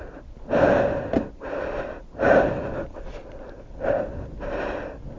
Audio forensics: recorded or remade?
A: recorded